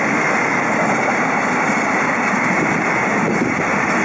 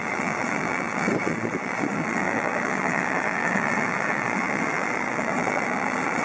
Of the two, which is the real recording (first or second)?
first